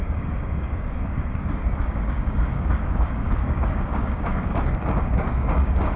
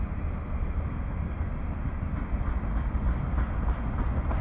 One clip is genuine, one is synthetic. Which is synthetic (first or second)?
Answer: first